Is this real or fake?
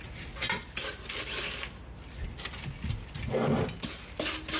real